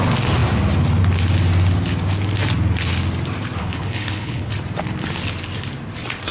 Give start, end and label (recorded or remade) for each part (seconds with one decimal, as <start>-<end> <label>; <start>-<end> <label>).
0.0-3.6 recorded; 3.6-4.5 remade; 4.5-6.3 recorded